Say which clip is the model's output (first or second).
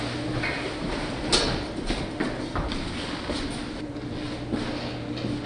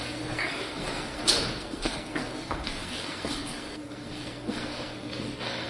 second